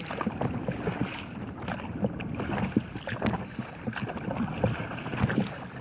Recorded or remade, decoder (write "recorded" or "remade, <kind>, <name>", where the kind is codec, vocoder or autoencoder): recorded